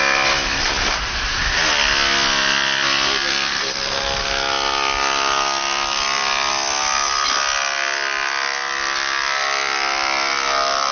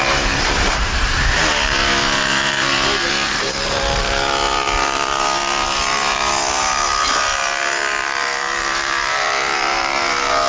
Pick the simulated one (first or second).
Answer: second